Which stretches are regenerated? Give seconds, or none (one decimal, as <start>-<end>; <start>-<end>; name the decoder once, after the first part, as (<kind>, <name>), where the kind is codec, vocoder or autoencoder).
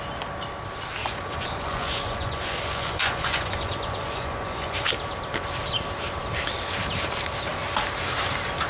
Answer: 1.0-4.9 (vocoder, Vocos)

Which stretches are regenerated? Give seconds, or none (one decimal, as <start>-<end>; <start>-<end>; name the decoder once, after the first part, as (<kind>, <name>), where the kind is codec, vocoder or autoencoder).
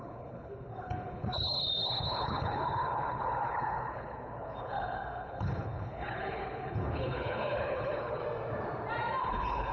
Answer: 0.0-8.2 (codec, HILCodec); 9.2-9.7